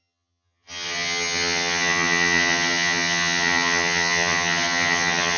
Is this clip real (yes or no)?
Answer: no